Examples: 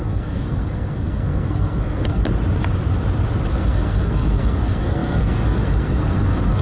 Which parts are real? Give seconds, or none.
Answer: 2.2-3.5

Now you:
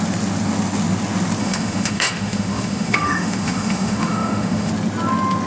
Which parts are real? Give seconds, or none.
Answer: 0.0-1.4; 4.7-5.5

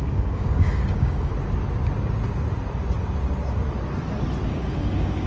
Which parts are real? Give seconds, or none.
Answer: 1.3-4.5